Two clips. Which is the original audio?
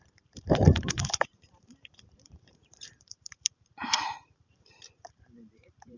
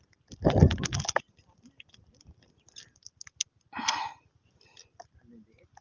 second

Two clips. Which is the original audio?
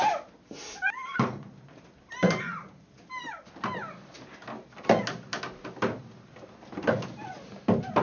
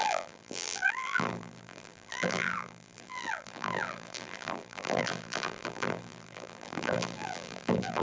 first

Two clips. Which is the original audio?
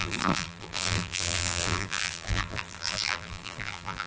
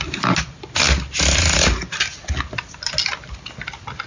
second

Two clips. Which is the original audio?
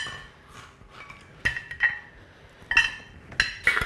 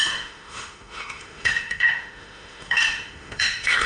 first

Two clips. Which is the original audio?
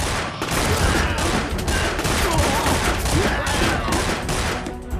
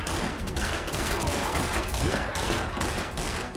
first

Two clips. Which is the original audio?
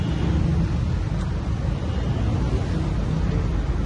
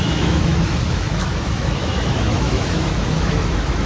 first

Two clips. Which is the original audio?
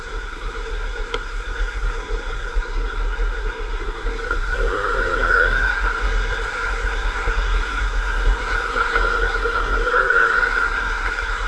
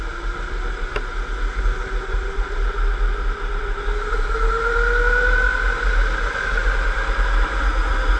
second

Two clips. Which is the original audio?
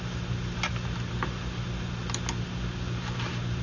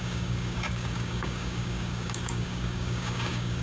first